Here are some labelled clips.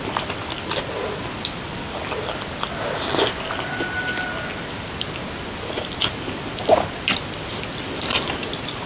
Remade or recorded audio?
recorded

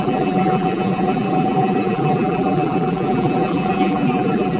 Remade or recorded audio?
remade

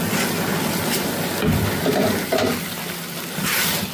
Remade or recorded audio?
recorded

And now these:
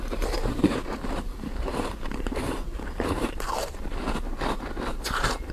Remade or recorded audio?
remade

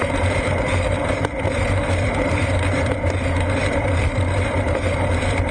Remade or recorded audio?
remade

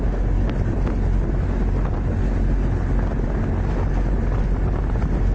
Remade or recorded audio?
recorded